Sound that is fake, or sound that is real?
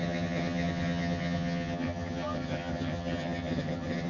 fake